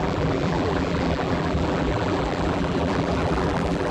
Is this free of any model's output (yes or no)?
no